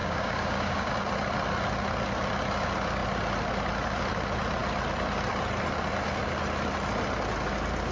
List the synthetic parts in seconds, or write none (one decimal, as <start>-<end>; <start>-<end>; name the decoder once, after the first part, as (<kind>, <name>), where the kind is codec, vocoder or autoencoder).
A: 0.0-0.9 (codec, DAC)